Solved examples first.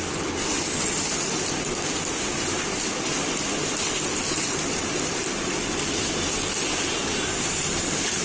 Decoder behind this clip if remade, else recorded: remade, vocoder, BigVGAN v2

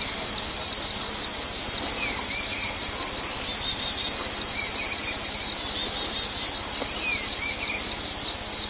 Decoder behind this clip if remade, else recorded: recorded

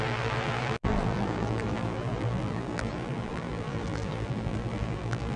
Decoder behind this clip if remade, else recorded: remade, vocoder, BigVGAN v2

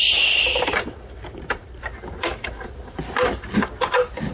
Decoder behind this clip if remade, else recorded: remade, vocoder, BigVGAN v2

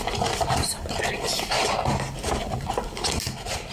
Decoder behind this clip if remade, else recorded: recorded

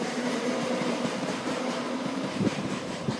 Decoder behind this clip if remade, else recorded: remade, vocoder, BigVGAN v2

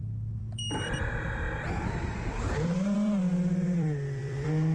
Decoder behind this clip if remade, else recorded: remade, vocoder, BigVGAN v2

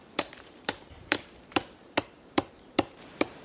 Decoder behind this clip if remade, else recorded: remade, vocoder, BigVGAN v2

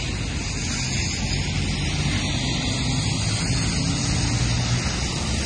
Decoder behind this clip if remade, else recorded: recorded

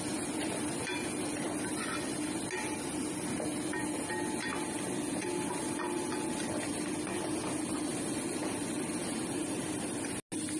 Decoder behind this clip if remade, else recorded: recorded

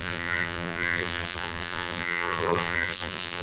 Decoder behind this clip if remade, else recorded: remade, vocoder, BigVGAN v2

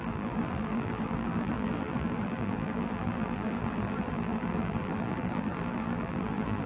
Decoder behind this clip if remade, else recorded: remade, vocoder, BigVGAN v2